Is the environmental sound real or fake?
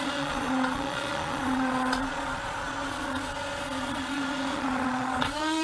fake